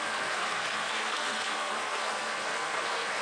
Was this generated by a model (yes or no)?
yes